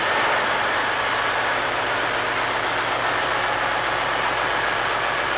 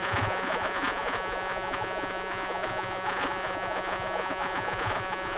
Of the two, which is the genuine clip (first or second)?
first